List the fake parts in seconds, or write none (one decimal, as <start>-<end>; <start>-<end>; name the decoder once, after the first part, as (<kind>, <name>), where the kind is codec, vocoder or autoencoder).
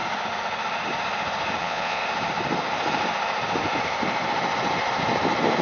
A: 1.6-2.0 (vocoder, Vocos)